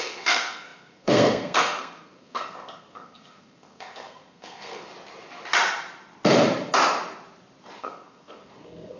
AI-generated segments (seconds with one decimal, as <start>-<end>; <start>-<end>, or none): 0.0-4.9; 7.8-9.0